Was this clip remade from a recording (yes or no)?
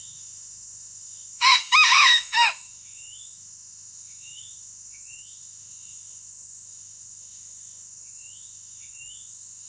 yes